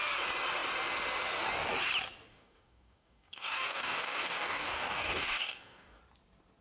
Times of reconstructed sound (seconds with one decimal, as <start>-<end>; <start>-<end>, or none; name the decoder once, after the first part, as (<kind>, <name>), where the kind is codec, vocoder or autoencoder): 2.3-6.0 (codec, DAC)